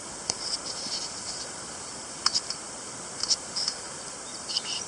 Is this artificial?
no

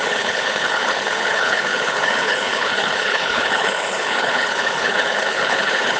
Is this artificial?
yes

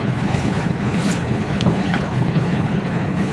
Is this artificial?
yes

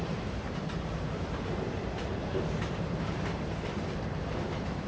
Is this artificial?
yes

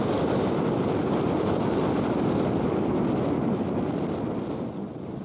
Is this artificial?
no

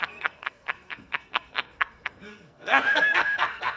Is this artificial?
yes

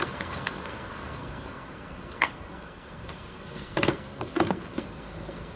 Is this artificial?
yes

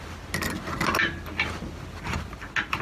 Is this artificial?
no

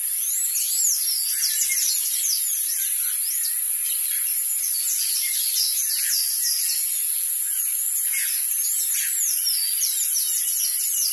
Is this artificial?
no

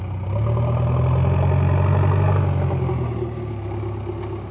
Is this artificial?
no